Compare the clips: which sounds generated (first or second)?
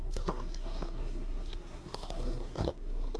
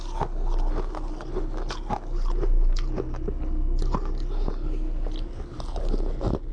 first